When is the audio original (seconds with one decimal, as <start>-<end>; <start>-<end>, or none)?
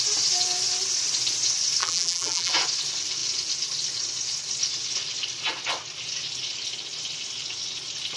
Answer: 0.0-1.8; 2.5-8.2